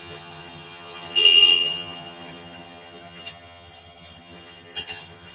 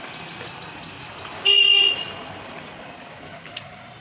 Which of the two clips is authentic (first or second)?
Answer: second